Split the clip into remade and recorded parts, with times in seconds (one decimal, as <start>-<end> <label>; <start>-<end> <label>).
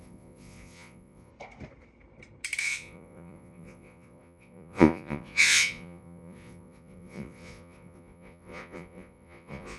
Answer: 0.0-1.3 remade; 1.3-2.6 recorded; 2.6-9.8 remade